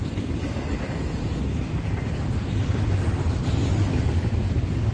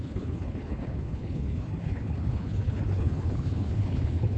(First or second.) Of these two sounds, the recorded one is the first